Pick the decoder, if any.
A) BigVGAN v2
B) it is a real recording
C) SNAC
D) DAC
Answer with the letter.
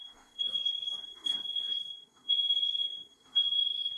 C